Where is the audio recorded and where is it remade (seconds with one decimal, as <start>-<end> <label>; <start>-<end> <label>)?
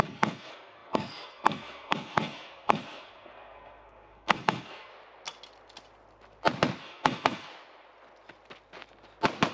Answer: 0.0-4.9 remade; 4.9-6.8 recorded; 6.8-7.5 remade; 7.5-9.5 recorded